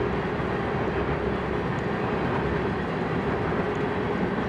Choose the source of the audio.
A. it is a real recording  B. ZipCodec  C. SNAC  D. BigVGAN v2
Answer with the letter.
A